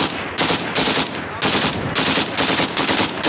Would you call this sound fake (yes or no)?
no